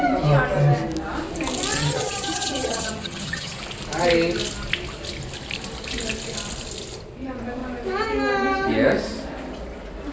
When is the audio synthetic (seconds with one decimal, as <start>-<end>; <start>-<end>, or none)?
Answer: 1.7-3.6